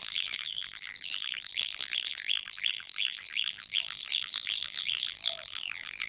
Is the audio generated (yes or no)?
yes